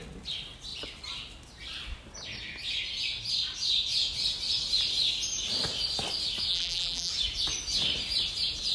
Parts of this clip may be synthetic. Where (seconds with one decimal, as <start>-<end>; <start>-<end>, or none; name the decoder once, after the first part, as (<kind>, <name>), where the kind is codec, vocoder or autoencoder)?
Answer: 6.5-7.1 (vocoder, BigVGAN v2)